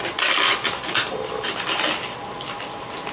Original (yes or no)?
yes